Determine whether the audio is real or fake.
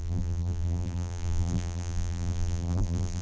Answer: fake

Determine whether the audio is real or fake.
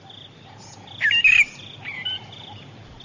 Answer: real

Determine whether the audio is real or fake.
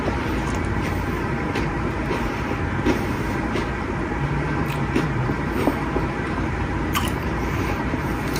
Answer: fake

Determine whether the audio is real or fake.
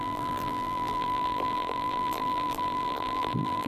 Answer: fake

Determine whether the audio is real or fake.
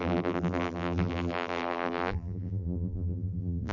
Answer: fake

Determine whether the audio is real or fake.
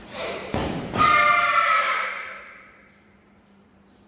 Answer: fake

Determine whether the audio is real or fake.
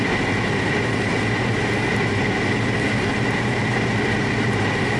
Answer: real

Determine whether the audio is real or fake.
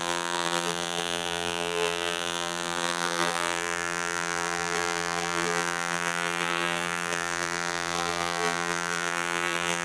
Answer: fake